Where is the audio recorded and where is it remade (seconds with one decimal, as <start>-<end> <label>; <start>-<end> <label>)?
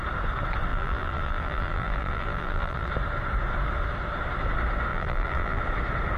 0.0-0.7 recorded; 0.7-2.9 remade; 2.9-4.9 recorded; 4.9-5.6 remade; 5.6-6.2 recorded